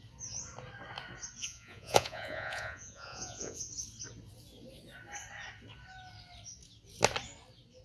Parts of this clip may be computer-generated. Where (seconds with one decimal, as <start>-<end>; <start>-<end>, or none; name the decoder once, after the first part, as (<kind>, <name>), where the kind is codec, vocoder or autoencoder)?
1.4-3.7 (vocoder, Vocos)